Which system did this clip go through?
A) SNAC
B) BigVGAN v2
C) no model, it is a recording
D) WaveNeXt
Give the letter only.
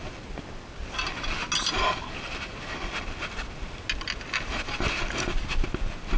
C